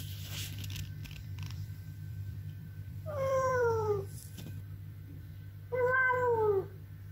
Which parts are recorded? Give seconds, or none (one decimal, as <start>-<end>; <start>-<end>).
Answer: 0.0-1.0; 5.3-7.1